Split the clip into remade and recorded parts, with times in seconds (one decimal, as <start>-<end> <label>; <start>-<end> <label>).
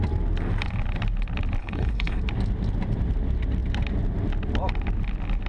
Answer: 0.0-1.6 recorded; 1.6-2.2 remade; 2.2-5.5 recorded